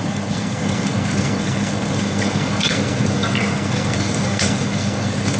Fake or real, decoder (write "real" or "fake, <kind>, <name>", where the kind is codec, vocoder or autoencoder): fake, codec, SNAC